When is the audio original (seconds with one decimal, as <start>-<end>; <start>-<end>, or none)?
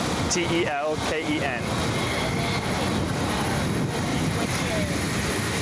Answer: 0.0-4.1; 4.7-5.6